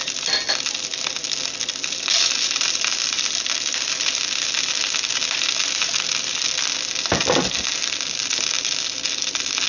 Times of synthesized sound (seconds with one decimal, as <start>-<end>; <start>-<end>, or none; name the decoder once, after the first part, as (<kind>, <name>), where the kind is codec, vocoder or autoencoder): none